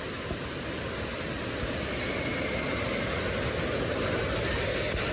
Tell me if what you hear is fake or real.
real